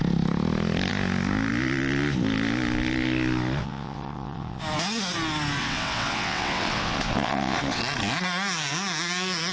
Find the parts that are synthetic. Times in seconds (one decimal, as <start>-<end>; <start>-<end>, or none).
3.6-4.6; 5.6-7.8